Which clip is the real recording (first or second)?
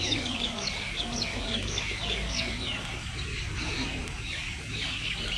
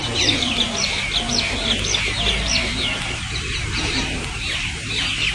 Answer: second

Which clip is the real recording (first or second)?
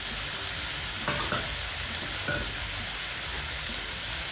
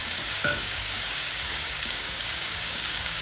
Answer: first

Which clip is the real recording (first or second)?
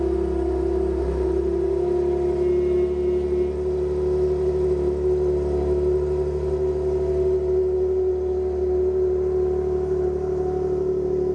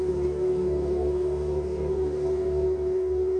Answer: first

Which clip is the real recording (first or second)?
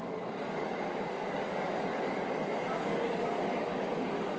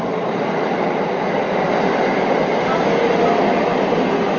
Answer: second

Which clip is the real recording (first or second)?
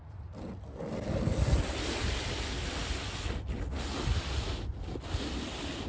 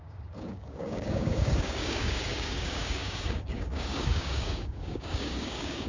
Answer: first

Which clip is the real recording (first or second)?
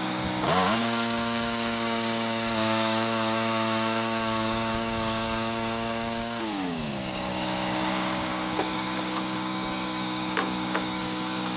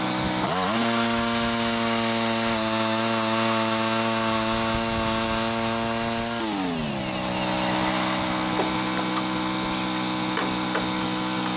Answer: second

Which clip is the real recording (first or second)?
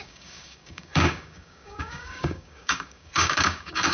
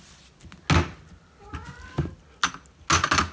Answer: second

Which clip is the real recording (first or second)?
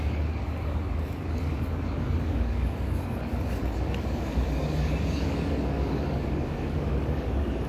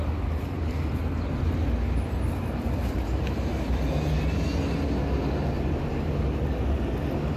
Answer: second